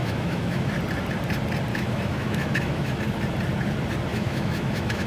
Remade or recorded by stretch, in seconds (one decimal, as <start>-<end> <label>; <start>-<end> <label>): 0.0-0.7 remade; 0.7-1.7 recorded; 1.7-3.0 remade; 3.0-4.1 recorded; 4.1-5.1 remade